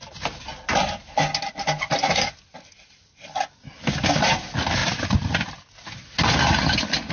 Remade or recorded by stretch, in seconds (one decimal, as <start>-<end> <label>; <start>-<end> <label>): 0.0-7.1 recorded